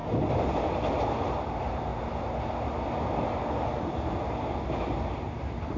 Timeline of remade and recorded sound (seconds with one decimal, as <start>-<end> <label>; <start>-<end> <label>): 0.0-1.0 recorded; 1.0-1.9 remade; 1.9-5.8 recorded